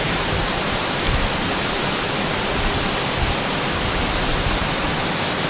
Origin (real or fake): real